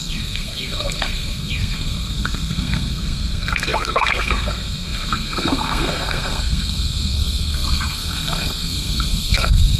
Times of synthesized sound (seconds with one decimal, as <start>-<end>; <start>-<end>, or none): 0.0-9.8